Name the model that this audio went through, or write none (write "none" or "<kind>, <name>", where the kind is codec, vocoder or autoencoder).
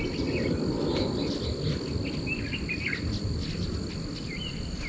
none